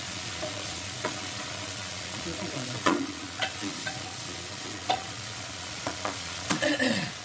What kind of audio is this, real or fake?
fake